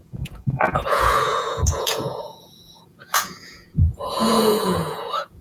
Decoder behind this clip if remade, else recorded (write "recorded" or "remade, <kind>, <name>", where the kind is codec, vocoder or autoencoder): remade, vocoder, Vocos